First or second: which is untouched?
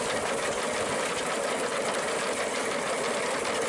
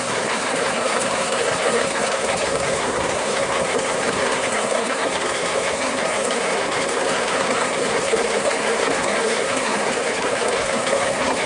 first